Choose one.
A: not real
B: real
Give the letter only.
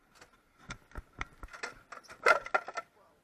B